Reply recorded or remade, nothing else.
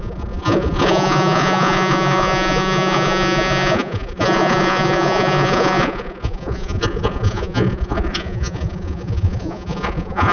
remade